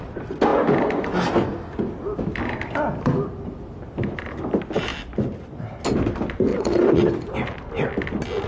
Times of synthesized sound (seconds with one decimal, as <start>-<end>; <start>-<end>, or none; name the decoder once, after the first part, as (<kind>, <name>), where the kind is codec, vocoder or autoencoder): 6.5-7.1 (vocoder, WaveNeXt)